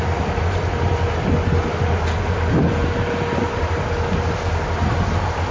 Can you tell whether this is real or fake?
real